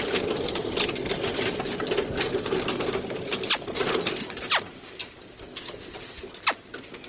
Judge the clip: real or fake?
real